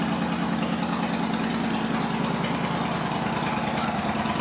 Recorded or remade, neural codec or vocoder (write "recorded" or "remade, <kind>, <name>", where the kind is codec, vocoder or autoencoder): recorded